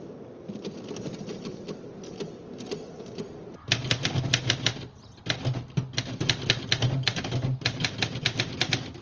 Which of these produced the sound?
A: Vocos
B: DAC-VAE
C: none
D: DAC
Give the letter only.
C